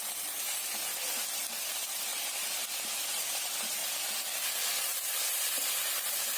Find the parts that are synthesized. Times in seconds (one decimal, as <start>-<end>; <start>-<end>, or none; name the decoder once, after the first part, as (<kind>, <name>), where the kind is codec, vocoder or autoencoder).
0.0-0.8 (vocoder, BigVGAN v2); 1.7-3.8; 6.0-6.4